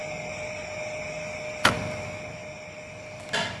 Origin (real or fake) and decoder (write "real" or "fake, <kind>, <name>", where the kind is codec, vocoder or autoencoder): real